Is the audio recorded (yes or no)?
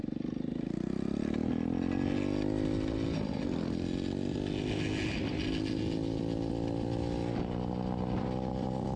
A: yes